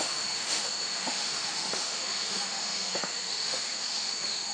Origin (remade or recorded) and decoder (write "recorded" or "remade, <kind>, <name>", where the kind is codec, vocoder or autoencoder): remade, autoencoder, DAC-VAE